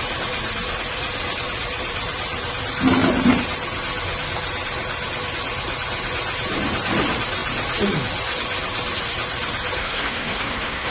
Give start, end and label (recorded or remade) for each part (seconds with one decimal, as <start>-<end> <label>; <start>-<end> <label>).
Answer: 0.0-9.8 recorded; 9.8-10.9 remade